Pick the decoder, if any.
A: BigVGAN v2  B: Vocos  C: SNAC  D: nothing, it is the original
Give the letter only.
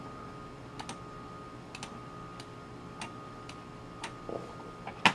D